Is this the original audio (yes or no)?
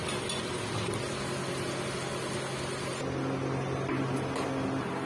yes